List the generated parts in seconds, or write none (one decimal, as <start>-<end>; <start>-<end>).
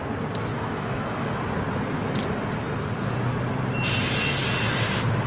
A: 0.5-1.4